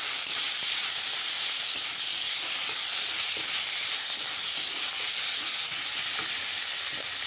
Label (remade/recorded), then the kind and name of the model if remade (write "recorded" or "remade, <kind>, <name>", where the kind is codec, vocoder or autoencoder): recorded